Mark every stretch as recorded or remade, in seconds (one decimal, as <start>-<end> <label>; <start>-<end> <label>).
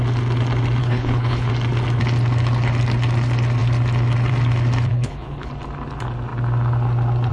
0.0-0.8 recorded; 0.8-1.5 remade; 1.5-4.9 recorded; 4.9-5.5 remade; 5.5-7.3 recorded